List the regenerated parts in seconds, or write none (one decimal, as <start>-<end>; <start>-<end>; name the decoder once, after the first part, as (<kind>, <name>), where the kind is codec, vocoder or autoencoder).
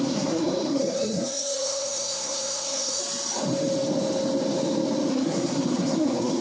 0.0-3.0 (codec, SNAC); 5.1-6.4